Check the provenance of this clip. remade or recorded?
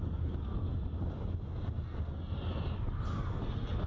recorded